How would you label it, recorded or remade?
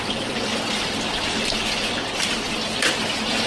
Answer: recorded